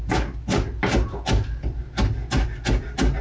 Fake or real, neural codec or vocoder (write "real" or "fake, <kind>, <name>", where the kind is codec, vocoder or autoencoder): real